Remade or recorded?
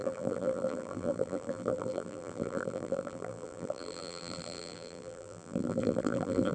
remade